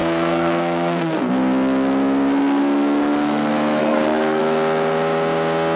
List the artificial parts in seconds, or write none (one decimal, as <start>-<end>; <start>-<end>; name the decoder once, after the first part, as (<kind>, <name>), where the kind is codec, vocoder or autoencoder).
0.0-1.3 (codec, SNAC); 3.8-4.4